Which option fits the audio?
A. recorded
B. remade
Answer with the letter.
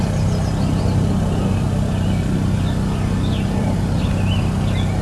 A